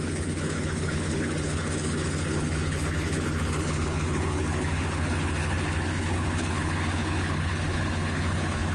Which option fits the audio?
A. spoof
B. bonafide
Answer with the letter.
A